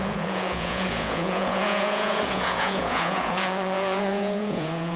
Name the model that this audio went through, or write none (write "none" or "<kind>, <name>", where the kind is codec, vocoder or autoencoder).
vocoder, Vocos